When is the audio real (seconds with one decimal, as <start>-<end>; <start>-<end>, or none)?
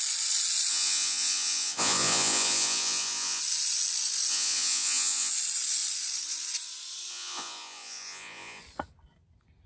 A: 0.0-0.7; 3.4-4.3; 5.3-7.1; 8.6-9.7